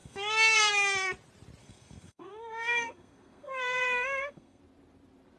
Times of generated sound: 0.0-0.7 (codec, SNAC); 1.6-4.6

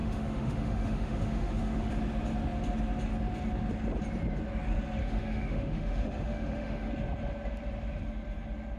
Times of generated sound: 0.0-1.9 (autoencoder, DAC-VAE); 5.0-6.9

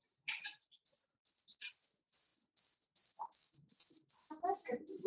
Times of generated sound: none

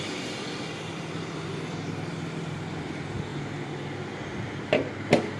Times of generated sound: 0.0-3.3 (vocoder, BigVGAN v2); 4.7-5.4